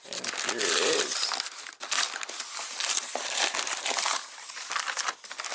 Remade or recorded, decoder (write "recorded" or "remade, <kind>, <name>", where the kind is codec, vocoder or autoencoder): recorded